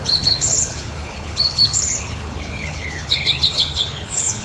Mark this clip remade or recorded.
remade